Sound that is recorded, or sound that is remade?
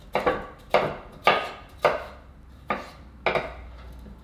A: recorded